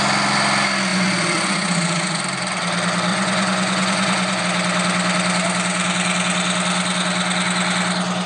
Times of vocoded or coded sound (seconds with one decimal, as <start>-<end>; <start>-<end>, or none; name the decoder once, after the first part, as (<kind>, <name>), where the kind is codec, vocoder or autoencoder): 0.9-2.2 (vocoder, Vocos); 3.1-4.4